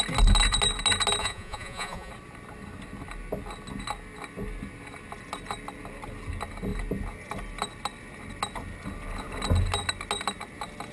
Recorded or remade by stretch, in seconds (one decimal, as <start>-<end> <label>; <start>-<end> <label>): 0.0-1.2 recorded; 1.2-2.1 remade; 2.1-10.9 recorded